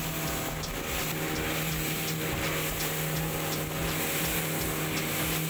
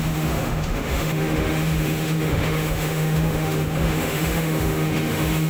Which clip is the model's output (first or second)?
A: second